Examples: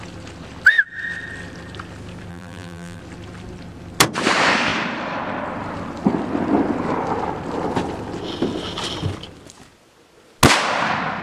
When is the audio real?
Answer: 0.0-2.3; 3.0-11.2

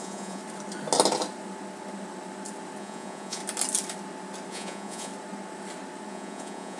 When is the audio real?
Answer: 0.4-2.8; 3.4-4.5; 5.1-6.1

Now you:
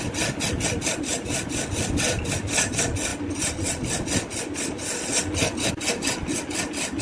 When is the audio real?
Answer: 0.0-7.0